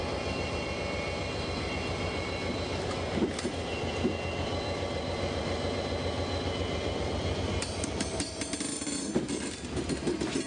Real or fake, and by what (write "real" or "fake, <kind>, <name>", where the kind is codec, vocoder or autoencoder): fake, vocoder, BigVGAN v2